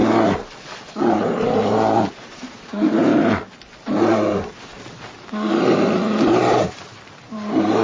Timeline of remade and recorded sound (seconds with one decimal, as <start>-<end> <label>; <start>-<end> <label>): 0.0-1.1 recorded; 1.1-3.1 remade; 3.1-3.9 recorded; 3.9-4.7 remade; 4.7-5.5 recorded; 5.5-7.8 remade